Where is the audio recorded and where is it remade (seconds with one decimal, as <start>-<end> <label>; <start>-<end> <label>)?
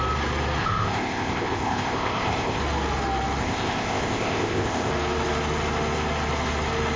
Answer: 0.0-0.6 recorded; 0.6-2.6 remade; 2.6-3.4 recorded; 3.4-4.9 remade; 4.9-7.0 recorded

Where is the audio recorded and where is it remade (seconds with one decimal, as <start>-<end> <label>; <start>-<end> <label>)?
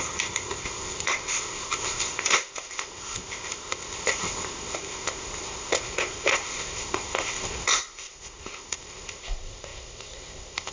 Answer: 0.0-10.7 remade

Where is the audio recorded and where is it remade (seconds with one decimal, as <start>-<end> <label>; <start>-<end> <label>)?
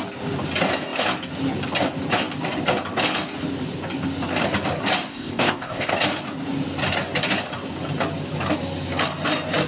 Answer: 0.0-5.1 recorded; 5.1-5.9 remade; 5.9-9.7 recorded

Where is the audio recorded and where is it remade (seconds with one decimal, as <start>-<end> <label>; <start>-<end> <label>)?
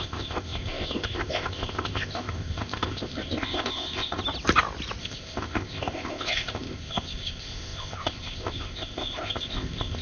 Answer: 0.0-4.2 remade; 4.2-5.0 recorded; 5.0-10.0 remade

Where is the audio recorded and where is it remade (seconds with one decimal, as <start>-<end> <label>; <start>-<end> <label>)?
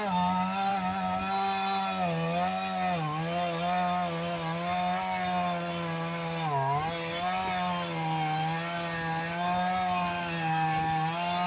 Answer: 0.0-11.5 recorded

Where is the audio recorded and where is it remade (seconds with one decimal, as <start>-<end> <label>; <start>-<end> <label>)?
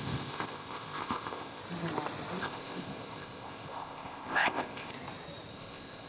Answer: 0.0-1.6 remade; 1.6-2.4 recorded; 2.4-4.9 remade; 4.9-5.5 recorded; 5.5-6.1 remade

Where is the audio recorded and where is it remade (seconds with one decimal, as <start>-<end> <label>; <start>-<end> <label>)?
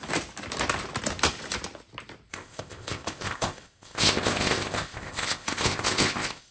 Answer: 0.0-2.3 recorded; 2.3-6.5 remade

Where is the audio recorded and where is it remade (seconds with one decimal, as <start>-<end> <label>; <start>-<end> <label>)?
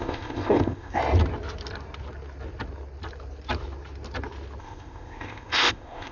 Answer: 0.0-1.0 remade; 1.0-4.6 recorded; 4.6-6.1 remade